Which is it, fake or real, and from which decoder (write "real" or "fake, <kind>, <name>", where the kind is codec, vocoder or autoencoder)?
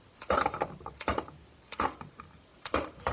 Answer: real